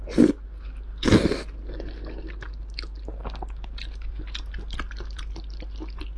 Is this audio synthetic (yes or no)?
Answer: no